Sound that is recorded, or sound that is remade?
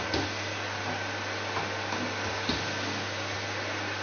recorded